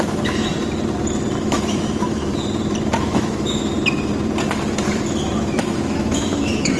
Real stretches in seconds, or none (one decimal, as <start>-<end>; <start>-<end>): 0.5-1.4; 2.3-3.0; 3.7-5.5